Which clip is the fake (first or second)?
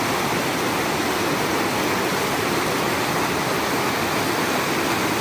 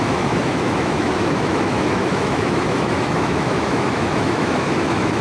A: second